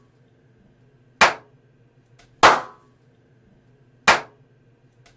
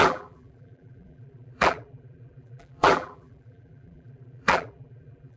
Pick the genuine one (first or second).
first